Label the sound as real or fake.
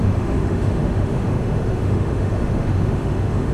fake